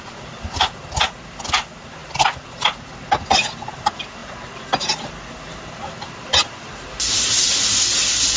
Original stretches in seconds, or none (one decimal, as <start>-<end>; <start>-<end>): 0.0-8.4